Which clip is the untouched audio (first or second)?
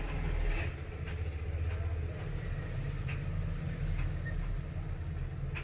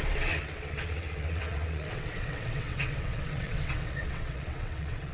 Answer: first